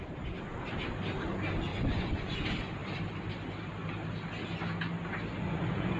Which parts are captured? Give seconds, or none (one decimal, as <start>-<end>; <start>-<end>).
0.0-1.7; 2.4-5.3